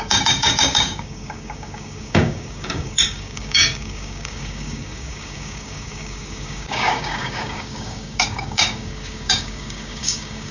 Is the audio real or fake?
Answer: fake